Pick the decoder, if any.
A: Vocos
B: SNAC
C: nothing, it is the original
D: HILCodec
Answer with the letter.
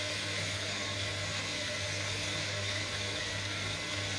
B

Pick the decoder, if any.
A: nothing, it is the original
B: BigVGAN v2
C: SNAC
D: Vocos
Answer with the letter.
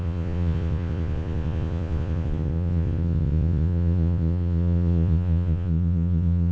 D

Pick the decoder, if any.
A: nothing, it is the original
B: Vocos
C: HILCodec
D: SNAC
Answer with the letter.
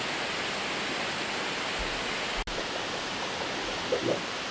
A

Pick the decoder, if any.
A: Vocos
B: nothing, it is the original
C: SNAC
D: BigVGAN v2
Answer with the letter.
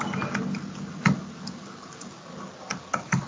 B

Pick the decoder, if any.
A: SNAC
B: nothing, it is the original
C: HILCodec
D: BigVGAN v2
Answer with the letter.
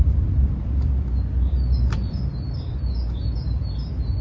D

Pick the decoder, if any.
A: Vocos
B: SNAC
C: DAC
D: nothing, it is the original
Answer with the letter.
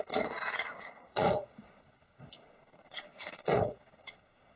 A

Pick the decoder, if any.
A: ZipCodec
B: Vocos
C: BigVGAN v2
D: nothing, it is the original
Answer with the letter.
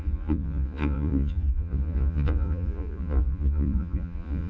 B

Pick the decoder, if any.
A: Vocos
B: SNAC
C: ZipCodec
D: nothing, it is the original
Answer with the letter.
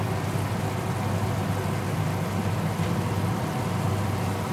D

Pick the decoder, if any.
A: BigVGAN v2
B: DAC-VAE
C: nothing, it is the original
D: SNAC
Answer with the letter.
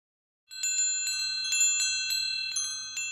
C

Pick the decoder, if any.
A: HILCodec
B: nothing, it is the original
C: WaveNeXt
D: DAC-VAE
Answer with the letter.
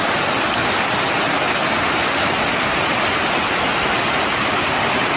B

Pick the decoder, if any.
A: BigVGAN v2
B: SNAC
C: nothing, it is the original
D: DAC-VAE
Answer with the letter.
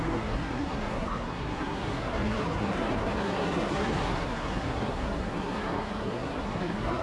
B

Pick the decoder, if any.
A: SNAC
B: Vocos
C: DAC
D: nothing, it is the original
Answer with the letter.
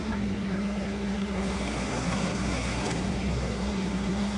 A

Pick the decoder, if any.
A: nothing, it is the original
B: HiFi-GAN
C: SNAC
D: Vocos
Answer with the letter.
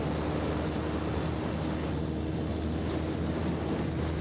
A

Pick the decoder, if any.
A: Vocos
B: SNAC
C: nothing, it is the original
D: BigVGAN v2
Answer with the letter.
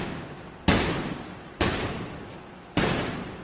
C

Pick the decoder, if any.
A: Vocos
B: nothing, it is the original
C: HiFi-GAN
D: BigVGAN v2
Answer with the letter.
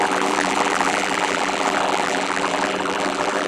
D